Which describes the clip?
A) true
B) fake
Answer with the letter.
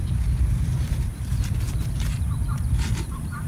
B